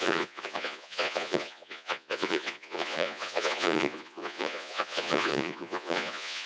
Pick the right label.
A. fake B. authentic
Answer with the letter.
A